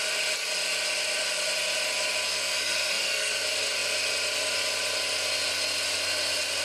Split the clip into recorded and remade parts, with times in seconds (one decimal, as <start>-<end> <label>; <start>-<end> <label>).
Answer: 0.0-2.3 recorded; 2.3-3.3 remade; 3.3-6.6 recorded